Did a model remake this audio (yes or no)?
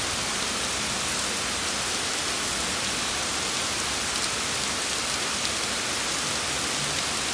no